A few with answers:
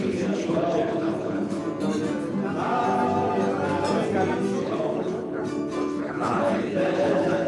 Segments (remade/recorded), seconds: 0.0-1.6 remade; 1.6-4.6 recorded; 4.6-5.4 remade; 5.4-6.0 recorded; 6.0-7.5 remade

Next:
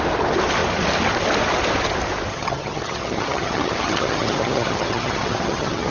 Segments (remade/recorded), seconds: 0.0-2.3 recorded; 2.3-5.9 remade